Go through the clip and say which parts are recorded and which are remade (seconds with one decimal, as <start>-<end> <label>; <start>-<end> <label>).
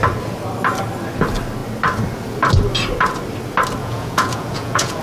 0.0-3.8 recorded; 3.8-5.0 remade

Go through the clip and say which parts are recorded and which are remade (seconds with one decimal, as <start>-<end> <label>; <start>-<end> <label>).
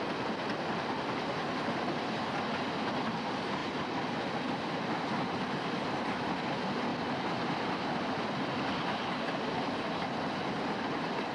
0.0-11.3 recorded